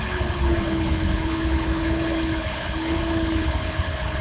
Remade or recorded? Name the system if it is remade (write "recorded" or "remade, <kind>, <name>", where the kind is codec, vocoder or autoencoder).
remade, codec, HILCodec